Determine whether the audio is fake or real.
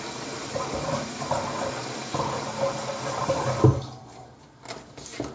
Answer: real